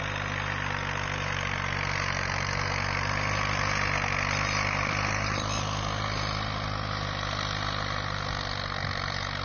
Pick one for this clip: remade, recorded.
recorded